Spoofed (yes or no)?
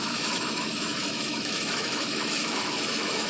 yes